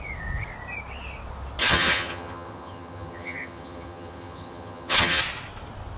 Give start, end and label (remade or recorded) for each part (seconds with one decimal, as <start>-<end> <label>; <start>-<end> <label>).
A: 0.0-1.6 recorded; 1.6-5.2 remade; 5.2-6.0 recorded